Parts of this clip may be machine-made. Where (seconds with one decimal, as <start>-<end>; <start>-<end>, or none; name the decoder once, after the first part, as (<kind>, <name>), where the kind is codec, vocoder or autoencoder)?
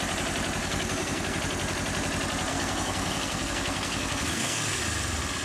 0.6-1.4 (codec, SNAC); 2.5-4.8